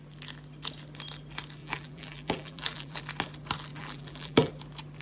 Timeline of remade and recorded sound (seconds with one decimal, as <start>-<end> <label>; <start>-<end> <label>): 0.0-1.6 recorded; 1.6-3.0 remade; 3.0-3.7 recorded; 3.7-4.5 remade; 4.5-5.0 recorded